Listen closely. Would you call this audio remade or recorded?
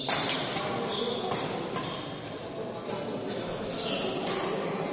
recorded